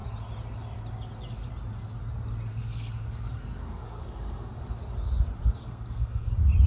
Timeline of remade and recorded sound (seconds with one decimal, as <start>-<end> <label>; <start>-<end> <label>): 0.0-2.5 recorded; 2.5-4.6 remade; 4.6-5.6 recorded; 5.6-6.3 remade; 6.3-6.7 recorded